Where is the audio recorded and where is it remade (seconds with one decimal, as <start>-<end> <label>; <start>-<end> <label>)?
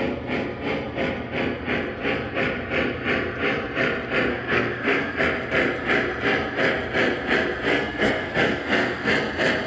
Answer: 0.0-4.3 recorded; 4.3-5.2 remade; 5.2-7.7 recorded; 7.7-9.1 remade; 9.1-9.7 recorded